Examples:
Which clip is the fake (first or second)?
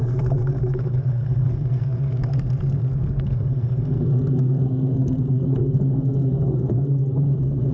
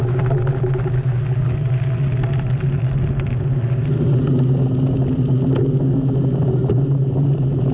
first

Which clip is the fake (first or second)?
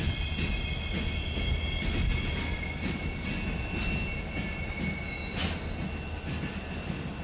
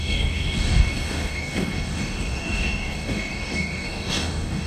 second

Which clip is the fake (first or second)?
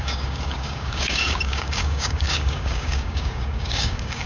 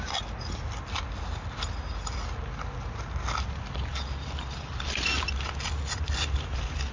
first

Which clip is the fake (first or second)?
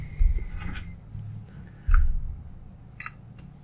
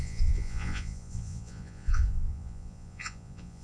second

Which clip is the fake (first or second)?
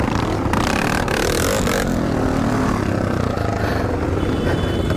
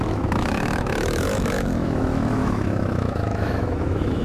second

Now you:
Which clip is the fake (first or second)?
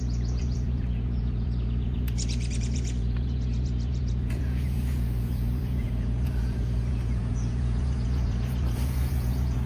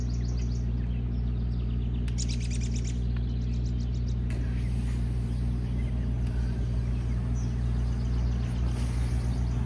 first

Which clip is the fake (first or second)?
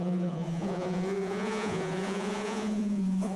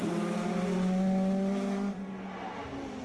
first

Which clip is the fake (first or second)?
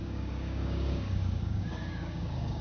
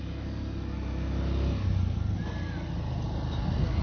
first